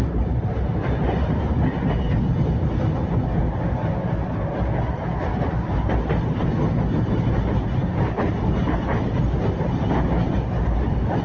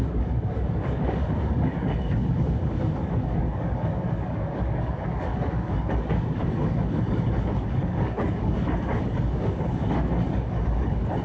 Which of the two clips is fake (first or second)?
second